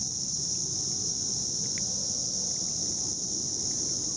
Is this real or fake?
real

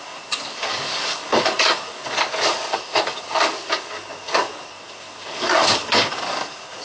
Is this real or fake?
fake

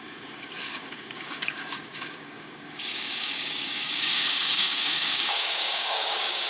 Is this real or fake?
fake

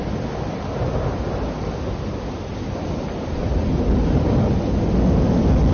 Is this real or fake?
real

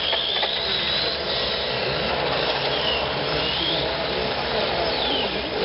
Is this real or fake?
real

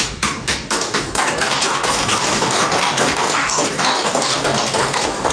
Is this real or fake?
fake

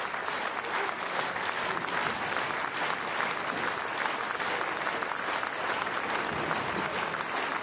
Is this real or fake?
real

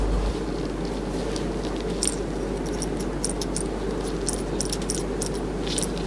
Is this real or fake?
real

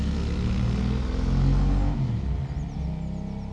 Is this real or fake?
real